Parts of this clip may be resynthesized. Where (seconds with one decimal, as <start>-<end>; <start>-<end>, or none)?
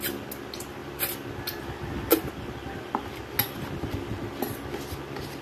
none